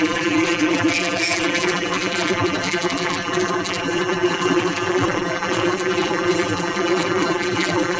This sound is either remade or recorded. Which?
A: remade